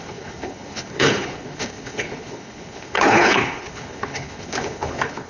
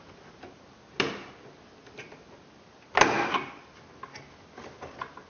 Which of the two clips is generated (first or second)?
first